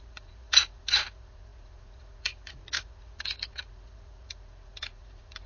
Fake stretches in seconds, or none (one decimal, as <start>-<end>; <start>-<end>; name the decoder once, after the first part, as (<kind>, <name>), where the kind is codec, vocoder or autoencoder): 0.0-5.5 (vocoder, Vocos)